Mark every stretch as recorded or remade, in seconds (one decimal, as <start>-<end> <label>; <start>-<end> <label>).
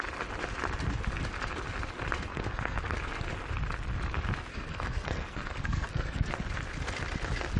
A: 0.0-2.3 recorded; 2.3-3.0 remade; 3.0-4.5 recorded; 4.5-6.3 remade; 6.3-7.6 recorded